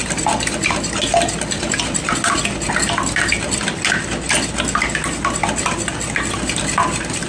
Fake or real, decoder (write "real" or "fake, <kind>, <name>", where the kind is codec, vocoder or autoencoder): real